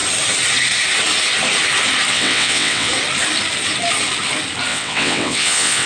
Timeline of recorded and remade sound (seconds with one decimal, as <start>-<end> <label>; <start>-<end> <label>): 0.0-2.1 recorded; 2.1-2.9 remade; 2.9-4.7 recorded; 4.7-5.9 remade